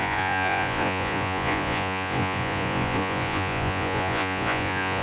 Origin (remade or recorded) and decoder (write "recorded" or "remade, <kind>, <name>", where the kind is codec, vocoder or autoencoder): remade, vocoder, Vocos